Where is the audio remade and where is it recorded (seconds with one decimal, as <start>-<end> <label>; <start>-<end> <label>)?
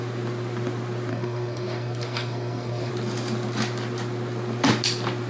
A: 0.0-1.1 recorded; 1.1-2.9 remade; 2.9-5.3 recorded